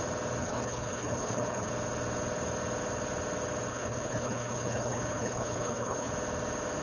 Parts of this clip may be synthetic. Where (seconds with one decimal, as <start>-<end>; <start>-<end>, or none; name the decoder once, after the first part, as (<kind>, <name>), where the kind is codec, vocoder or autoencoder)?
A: 0.4-1.7 (codec, HILCodec); 3.7-6.1